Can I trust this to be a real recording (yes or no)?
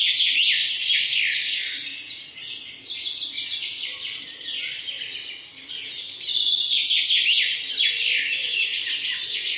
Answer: yes